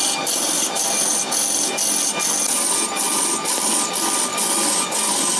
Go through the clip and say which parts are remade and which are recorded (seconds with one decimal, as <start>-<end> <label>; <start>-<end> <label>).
0.0-4.3 recorded; 4.3-5.4 remade